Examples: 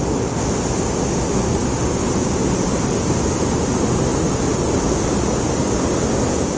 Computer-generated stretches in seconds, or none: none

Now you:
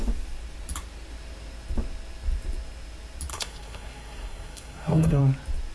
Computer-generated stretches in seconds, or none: 3.3-5.2 (codec, SNAC)

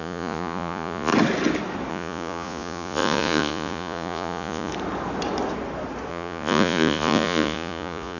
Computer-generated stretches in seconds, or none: 0.0-1.1 (vocoder, Vocos); 1.9-4.7; 6.1-8.2